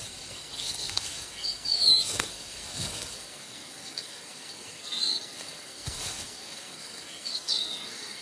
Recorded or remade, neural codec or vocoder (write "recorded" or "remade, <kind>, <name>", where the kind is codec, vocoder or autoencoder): remade, codec, SNAC